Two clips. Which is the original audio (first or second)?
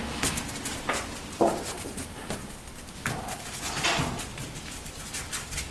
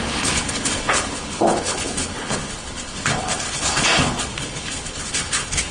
first